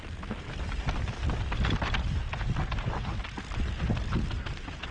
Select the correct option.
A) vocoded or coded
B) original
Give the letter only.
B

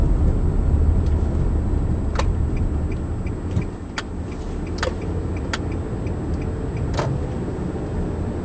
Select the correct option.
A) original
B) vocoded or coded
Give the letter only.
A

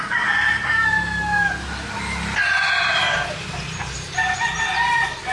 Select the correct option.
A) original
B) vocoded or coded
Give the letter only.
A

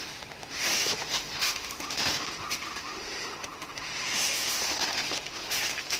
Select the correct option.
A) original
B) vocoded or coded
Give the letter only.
B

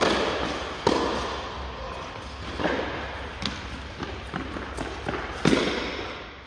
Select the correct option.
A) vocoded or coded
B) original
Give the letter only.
B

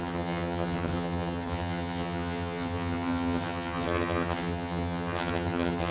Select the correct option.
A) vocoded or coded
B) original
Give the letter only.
A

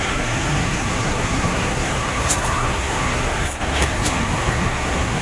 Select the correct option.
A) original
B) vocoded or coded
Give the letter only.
B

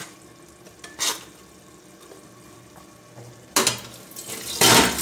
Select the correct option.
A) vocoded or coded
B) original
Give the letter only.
B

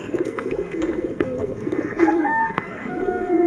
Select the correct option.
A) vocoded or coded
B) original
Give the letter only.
A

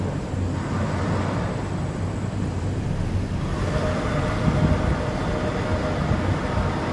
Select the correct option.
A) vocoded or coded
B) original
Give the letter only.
B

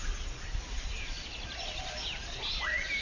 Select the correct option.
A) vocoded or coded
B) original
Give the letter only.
B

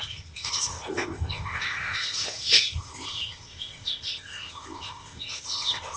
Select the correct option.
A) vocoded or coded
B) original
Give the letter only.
A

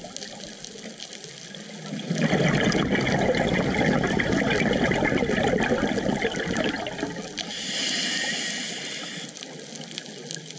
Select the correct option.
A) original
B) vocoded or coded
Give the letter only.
A